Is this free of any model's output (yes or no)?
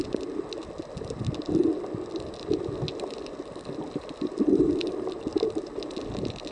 yes